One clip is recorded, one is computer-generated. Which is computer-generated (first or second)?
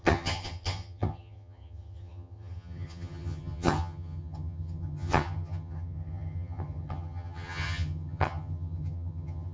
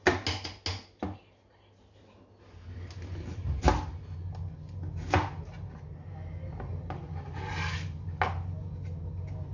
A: first